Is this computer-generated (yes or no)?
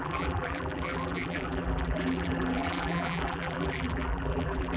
yes